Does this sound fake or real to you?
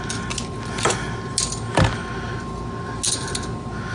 real